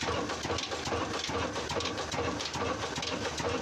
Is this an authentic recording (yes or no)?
yes